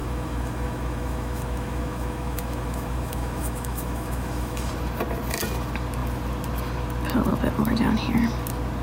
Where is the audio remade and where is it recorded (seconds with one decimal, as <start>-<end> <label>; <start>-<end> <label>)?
0.0-4.7 remade; 4.7-8.8 recorded